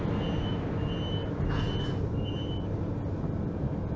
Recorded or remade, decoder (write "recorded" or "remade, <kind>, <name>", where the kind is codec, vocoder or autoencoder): recorded